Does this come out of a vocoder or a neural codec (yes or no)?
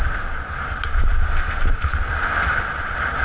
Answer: no